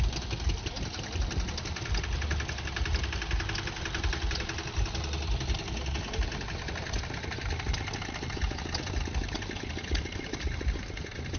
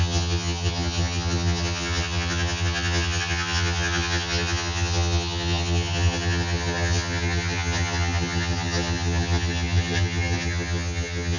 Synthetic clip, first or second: second